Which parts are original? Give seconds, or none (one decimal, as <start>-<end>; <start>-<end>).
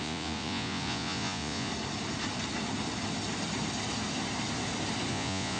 1.7-5.1